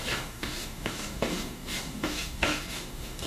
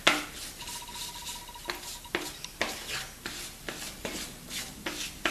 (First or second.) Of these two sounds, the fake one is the first